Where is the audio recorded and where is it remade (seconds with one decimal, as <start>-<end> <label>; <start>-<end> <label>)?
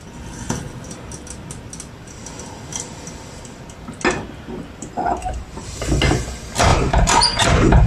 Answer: 0.0-5.2 recorded; 5.2-5.9 remade; 5.9-6.7 recorded; 6.7-7.9 remade